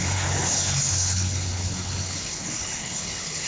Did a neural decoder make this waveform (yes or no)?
yes